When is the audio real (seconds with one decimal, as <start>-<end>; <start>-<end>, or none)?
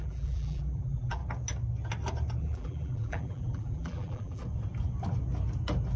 1.2-2.4; 4.4-6.0